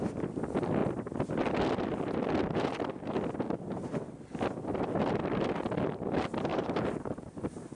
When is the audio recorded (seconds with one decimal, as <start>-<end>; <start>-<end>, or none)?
0.0-6.5